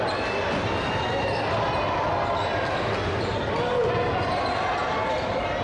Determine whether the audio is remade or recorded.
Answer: recorded